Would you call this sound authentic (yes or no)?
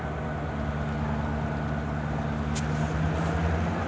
yes